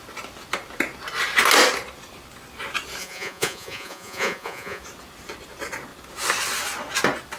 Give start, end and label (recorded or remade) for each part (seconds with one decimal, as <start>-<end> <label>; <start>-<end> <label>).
0.0-3.0 recorded; 3.0-4.8 remade; 4.8-7.4 recorded